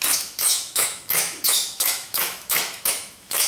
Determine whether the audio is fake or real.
fake